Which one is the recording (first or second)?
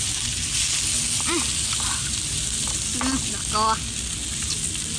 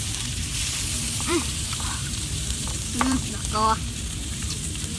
first